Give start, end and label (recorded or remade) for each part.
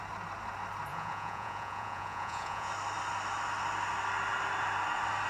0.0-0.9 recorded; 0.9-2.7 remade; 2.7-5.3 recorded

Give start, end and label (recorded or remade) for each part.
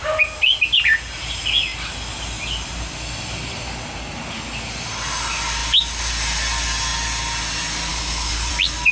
0.0-7.9 recorded; 7.9-8.5 remade; 8.5-8.9 recorded